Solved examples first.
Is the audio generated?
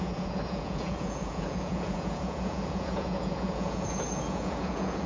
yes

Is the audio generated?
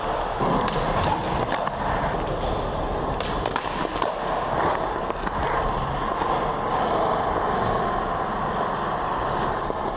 no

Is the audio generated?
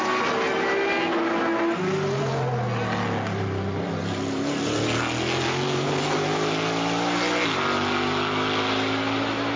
no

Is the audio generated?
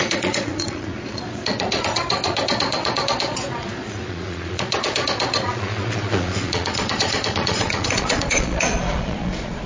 yes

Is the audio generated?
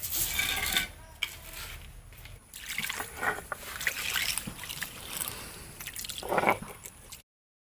no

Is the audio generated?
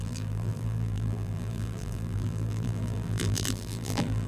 yes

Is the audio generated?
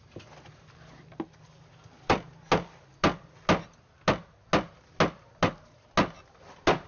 no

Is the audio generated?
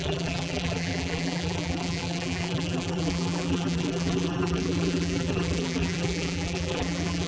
yes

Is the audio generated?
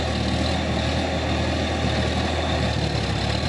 no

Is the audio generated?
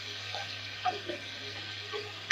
yes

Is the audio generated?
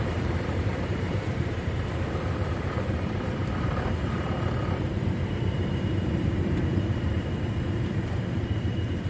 yes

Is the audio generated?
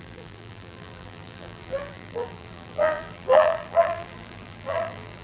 yes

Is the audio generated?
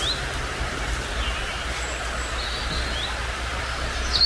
no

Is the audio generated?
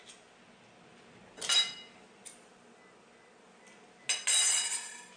no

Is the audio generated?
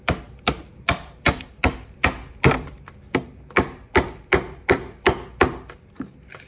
yes